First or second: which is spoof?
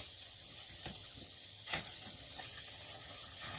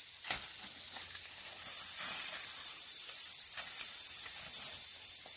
first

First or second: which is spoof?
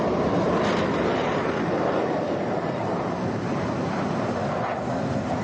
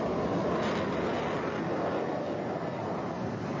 first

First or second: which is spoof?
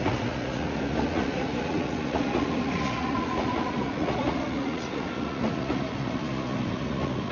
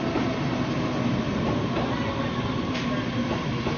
first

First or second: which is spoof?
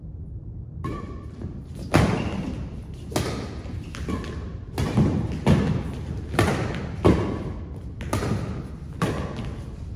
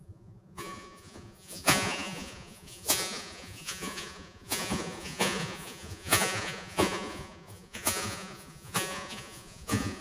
second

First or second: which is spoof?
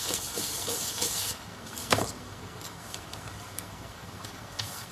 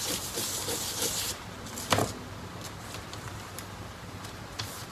first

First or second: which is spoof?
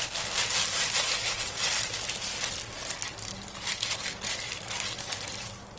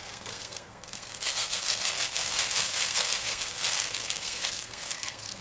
second